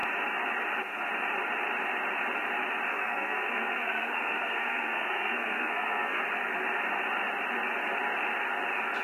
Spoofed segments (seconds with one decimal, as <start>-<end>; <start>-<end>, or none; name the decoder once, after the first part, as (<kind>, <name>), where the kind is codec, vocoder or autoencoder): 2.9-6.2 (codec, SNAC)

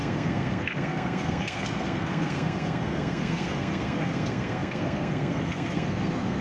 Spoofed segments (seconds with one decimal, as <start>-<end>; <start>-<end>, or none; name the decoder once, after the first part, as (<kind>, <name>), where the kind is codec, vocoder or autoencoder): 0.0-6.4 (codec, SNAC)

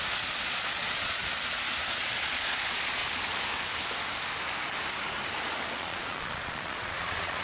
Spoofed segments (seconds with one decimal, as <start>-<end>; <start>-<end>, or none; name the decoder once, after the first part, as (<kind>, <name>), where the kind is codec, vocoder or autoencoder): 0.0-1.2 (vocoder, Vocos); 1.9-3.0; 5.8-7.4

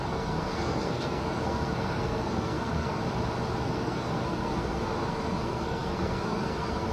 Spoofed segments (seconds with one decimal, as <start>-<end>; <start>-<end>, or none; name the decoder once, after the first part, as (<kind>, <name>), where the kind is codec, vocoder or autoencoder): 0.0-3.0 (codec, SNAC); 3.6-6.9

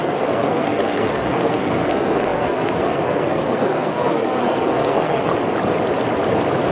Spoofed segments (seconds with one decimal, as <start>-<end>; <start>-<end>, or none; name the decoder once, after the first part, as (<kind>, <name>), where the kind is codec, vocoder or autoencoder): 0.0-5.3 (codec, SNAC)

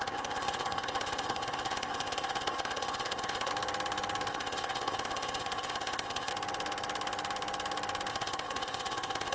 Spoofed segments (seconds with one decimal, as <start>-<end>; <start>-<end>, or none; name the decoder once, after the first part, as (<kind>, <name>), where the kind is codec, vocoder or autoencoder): 0.0-3.5 (codec, ZipCodec); 4.3-6.3; 8.1-9.3

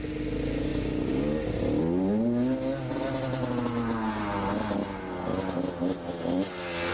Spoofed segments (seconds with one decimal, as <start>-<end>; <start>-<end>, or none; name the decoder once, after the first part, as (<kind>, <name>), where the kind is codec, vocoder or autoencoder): none